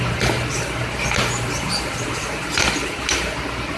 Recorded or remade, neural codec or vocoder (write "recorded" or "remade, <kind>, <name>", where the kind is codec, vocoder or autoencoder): recorded